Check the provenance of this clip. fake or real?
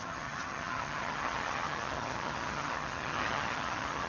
fake